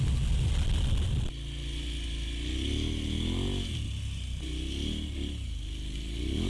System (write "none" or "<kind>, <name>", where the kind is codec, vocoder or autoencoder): none